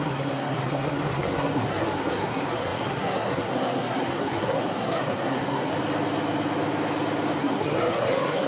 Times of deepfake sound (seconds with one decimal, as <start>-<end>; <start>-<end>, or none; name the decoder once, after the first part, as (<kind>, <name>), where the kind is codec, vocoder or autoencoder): 0.0-5.7 (codec, SNAC); 7.4-8.5